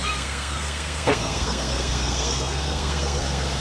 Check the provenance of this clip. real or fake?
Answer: fake